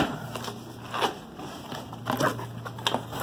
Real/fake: real